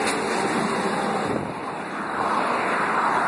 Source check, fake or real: real